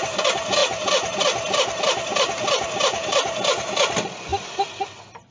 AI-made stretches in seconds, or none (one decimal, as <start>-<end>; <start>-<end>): none